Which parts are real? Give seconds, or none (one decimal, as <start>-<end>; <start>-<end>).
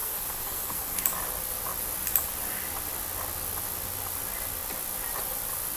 1.0-5.8